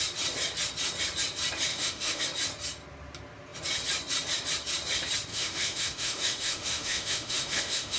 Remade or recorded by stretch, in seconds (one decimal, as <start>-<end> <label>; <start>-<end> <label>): 0.0-1.7 recorded; 1.7-2.2 remade; 2.2-5.3 recorded; 5.3-8.0 remade